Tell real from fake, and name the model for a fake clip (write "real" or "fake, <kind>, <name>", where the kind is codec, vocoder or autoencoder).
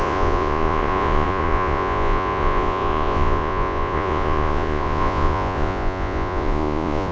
fake, vocoder, Vocos